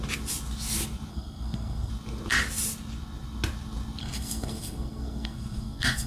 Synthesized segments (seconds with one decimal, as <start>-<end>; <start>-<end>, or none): 1.1-1.9; 4.0-6.1